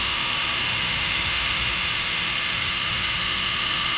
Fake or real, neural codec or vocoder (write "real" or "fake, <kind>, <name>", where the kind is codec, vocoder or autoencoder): fake, autoencoder, DAC-VAE